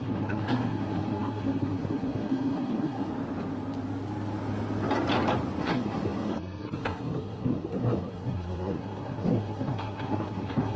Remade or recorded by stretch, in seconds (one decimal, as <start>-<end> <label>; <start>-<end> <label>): 0.0-3.1 remade; 3.1-5.6 recorded; 5.6-10.8 remade